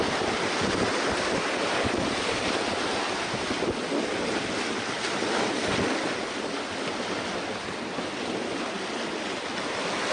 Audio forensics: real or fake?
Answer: real